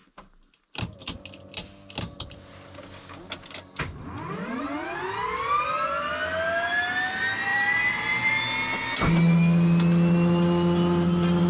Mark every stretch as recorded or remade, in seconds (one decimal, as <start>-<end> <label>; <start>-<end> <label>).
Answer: 0.0-7.5 recorded; 7.5-8.3 remade; 8.3-11.5 recorded